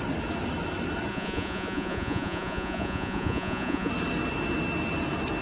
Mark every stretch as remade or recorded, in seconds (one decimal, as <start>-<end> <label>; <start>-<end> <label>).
0.0-1.1 recorded; 1.1-3.9 remade; 3.9-5.4 recorded